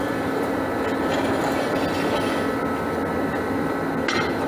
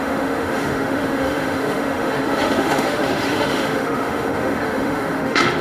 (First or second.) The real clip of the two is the first